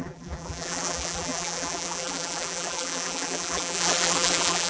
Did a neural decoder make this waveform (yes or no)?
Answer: yes